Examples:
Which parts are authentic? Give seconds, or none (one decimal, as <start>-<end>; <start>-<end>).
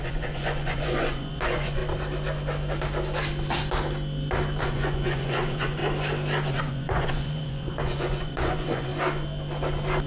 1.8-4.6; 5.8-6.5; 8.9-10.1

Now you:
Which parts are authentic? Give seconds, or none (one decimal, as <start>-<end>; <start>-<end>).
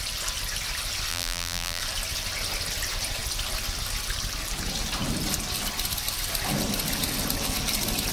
0.0-1.1; 1.8-8.1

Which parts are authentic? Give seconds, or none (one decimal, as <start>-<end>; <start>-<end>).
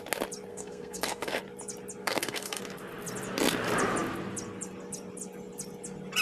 0.0-0.5; 1.4-2.0; 2.6-6.2